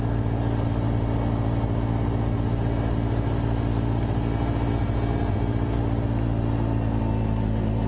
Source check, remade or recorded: recorded